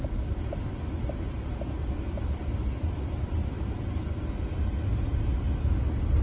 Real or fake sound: real